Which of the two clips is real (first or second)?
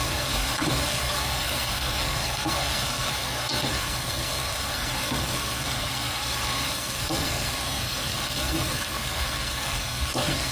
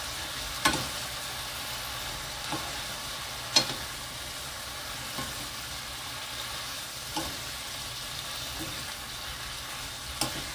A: second